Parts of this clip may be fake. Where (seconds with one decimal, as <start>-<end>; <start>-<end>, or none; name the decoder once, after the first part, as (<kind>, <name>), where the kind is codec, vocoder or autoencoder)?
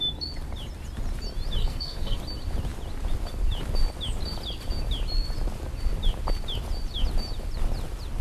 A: 1.6-2.2 (codec, SNAC)